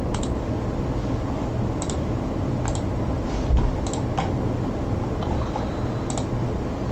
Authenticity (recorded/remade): recorded